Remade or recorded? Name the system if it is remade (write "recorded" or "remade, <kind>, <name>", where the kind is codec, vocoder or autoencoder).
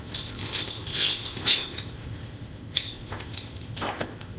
remade, codec, ZipCodec